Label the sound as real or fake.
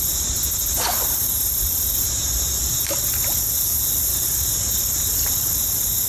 real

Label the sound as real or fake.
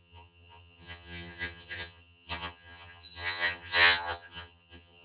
fake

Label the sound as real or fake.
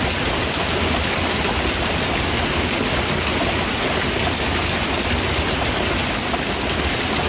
real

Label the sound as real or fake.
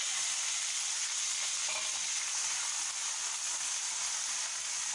real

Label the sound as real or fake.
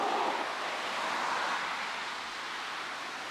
real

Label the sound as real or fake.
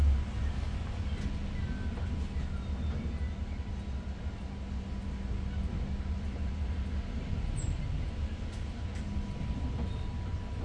real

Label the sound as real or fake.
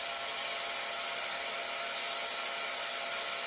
real